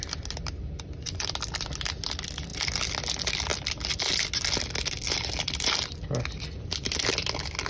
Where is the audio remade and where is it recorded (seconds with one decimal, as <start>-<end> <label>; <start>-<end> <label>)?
0.0-7.7 recorded